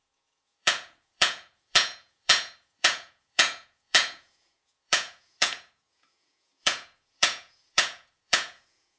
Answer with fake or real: fake